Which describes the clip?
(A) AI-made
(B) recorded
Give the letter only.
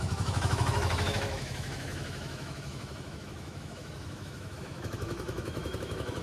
A